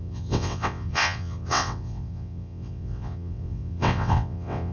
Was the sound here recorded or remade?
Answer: remade